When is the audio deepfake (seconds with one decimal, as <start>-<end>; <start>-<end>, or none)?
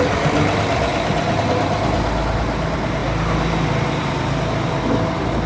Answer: none